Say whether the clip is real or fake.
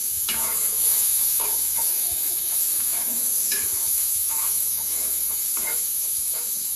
fake